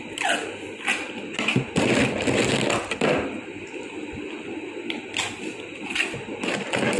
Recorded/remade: recorded